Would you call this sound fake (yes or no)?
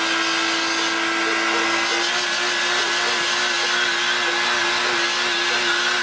no